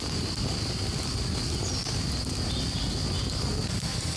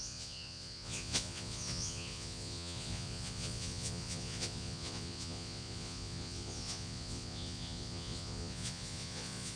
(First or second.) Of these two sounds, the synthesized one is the second